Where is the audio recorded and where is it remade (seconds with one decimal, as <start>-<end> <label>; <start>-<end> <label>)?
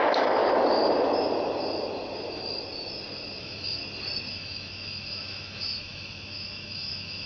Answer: 0.0-0.4 remade; 0.4-3.4 recorded; 3.4-3.8 remade; 3.8-4.3 recorded; 4.3-7.3 remade